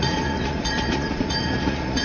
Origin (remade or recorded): remade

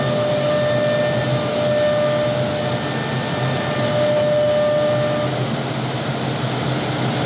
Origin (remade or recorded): recorded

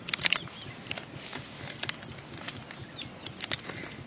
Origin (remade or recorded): recorded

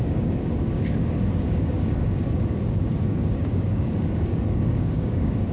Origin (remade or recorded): remade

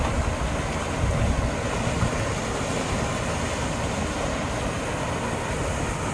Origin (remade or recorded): recorded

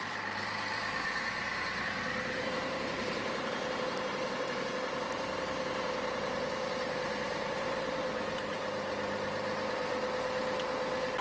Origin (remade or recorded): recorded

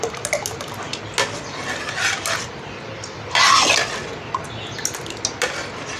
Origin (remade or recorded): recorded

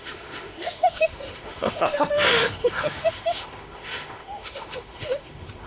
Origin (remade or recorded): remade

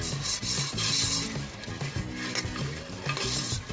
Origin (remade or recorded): recorded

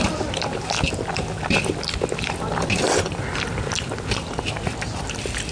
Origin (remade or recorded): recorded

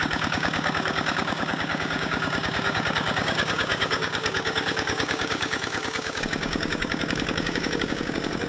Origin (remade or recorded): remade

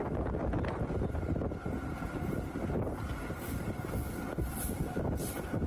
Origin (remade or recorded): recorded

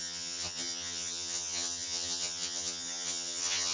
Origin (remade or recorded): remade